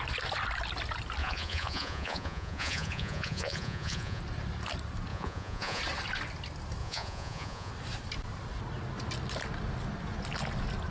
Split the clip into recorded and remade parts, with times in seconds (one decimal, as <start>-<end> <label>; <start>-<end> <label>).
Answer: 0.0-1.2 recorded; 1.2-4.2 remade; 4.2-5.1 recorded; 5.1-5.8 remade; 5.8-6.8 recorded; 6.8-7.7 remade; 7.7-10.9 recorded